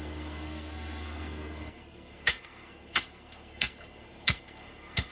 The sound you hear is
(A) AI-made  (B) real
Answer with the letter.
A